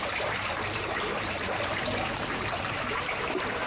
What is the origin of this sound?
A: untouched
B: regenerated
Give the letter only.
B